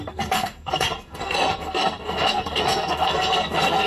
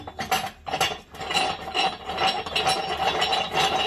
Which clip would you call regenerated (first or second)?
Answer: first